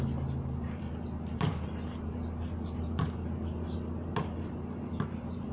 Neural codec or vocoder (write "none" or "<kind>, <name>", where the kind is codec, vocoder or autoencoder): none